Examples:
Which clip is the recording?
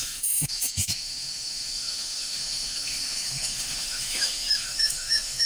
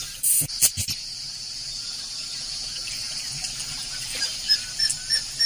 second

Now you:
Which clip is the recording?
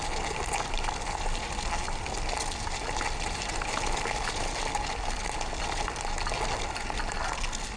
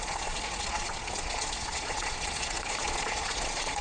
first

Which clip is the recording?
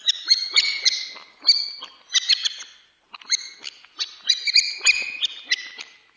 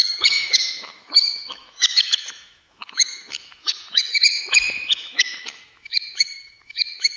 first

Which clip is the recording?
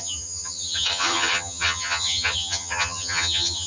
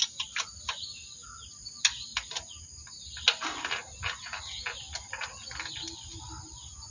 second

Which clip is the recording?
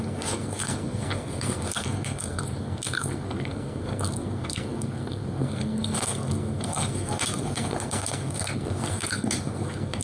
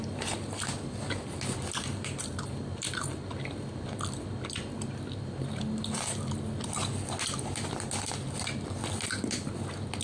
second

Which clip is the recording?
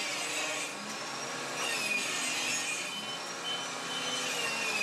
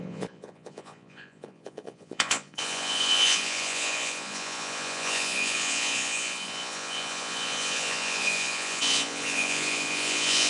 first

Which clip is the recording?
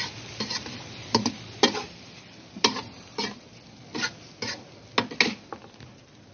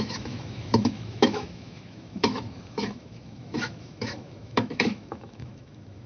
first